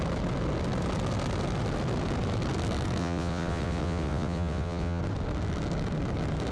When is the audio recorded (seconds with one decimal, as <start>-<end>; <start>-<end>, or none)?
0.0-3.0; 5.0-6.5